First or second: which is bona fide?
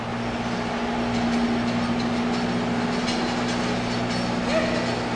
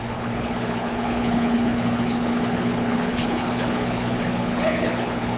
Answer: first